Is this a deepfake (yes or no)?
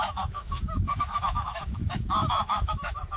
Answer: yes